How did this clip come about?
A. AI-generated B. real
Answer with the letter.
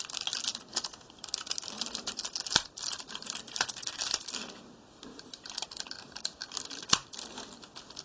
B